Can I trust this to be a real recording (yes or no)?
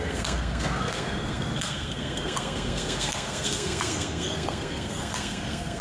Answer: no